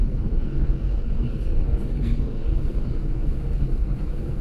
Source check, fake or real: fake